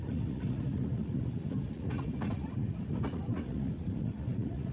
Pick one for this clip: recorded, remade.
remade